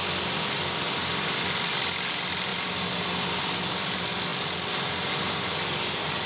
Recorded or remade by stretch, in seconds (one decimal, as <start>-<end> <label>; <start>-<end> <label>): 0.0-6.3 recorded